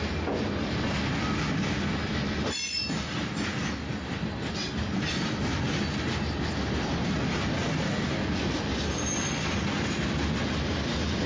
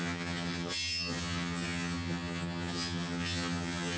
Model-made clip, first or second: second